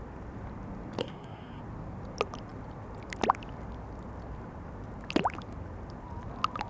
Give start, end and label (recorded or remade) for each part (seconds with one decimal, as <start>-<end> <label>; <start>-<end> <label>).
0.0-1.0 recorded; 1.0-1.6 remade; 1.6-6.7 recorded

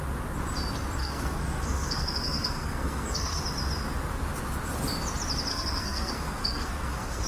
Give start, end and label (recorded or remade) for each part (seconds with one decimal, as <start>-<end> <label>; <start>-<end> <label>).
0.0-1.0 recorded; 1.0-3.4 remade; 3.4-5.5 recorded; 5.5-7.3 remade

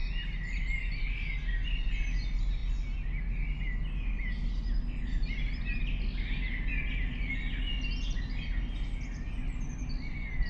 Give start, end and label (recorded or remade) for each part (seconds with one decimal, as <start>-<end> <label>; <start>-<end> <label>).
0.0-10.5 recorded

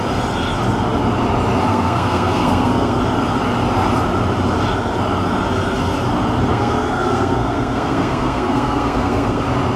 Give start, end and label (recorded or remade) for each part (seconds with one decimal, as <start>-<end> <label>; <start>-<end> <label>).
0.0-1.7 recorded; 1.7-3.0 remade; 3.0-6.5 recorded; 6.5-9.4 remade; 9.4-9.8 recorded

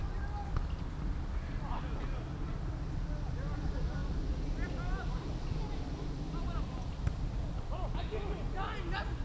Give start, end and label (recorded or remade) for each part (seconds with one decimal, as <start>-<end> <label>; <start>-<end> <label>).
0.0-9.2 recorded

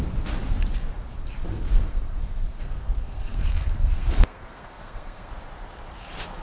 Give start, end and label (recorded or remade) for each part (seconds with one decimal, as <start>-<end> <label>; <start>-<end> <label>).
0.0-1.5 recorded; 1.5-5.3 remade; 5.3-6.4 recorded